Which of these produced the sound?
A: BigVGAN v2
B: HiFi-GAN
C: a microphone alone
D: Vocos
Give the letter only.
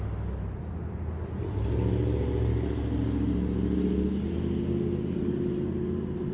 C